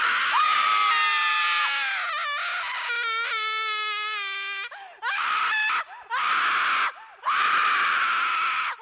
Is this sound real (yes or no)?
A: yes